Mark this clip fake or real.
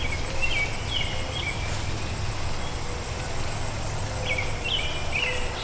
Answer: real